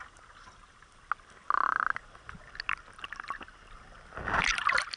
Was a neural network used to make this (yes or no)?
no